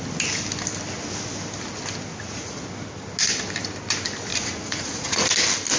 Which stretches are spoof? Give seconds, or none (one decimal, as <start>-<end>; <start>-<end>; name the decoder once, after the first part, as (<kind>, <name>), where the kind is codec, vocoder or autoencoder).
2.1-2.6 (vocoder, Vocos); 4.3-5.3

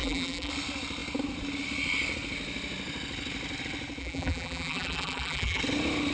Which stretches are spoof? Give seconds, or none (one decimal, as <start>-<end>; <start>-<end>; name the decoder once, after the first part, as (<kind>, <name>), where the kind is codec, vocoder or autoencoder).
0.0-0.5 (vocoder, BigVGAN v2); 4.0-5.6